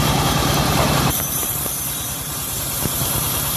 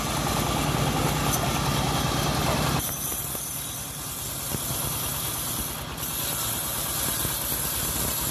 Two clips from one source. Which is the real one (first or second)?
second